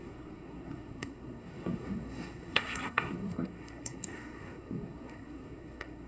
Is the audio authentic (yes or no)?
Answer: no